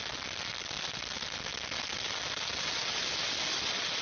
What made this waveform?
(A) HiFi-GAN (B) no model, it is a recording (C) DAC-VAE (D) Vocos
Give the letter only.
B